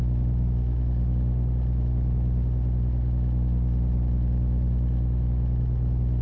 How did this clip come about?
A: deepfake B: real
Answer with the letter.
B